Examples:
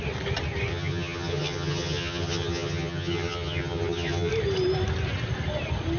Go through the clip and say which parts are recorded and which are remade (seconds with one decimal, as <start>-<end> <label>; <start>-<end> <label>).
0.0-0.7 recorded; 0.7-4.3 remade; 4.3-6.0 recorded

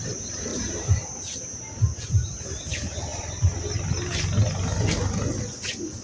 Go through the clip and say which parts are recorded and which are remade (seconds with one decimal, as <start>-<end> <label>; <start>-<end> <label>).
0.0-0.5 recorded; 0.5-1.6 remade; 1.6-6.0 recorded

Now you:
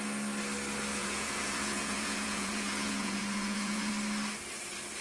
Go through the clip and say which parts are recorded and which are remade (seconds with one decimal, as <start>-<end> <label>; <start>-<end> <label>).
0.0-0.9 recorded; 0.9-3.9 remade; 3.9-5.0 recorded

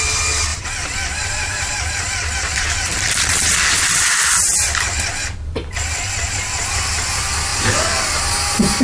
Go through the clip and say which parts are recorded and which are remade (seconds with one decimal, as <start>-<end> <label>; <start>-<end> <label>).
0.0-0.5 recorded; 0.5-3.7 remade; 3.7-7.5 recorded; 7.5-8.1 remade; 8.1-8.8 recorded

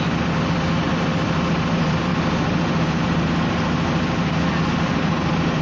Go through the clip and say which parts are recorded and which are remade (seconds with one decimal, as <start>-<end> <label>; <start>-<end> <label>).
0.0-5.6 recorded

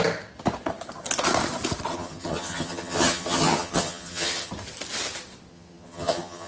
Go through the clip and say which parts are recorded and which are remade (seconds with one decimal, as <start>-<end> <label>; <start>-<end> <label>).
0.0-1.9 recorded; 1.9-4.5 remade; 4.5-5.5 recorded; 5.5-6.5 remade

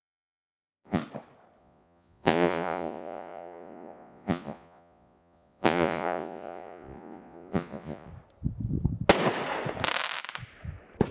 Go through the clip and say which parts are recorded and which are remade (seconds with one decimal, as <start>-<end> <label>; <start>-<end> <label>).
0.0-1.0 remade; 1.0-1.6 recorded; 1.6-8.1 remade; 8.1-11.1 recorded